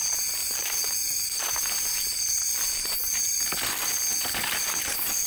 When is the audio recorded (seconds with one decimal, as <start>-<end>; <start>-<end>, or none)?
0.0-0.4; 1.5-5.3